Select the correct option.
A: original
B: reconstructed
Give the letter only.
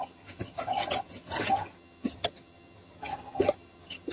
B